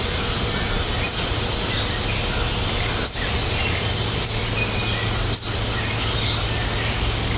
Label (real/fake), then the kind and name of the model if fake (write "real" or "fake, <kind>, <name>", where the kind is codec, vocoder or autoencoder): real